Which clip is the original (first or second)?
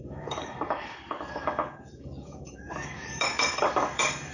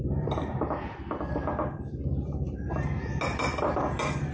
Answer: second